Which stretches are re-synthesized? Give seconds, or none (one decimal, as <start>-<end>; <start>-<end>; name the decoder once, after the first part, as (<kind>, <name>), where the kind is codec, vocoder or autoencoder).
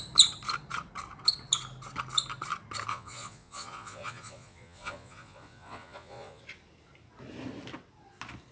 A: 2.9-6.4 (vocoder, Vocos)